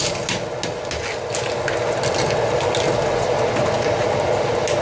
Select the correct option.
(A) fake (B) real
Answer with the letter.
B